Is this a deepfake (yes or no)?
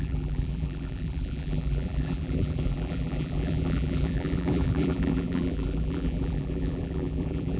yes